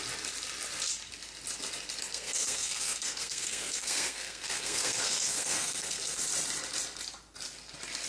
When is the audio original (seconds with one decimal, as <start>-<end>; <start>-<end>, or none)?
0.0-2.1; 6.2-8.1